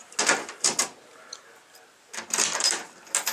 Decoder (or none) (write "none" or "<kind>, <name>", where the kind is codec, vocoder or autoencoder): none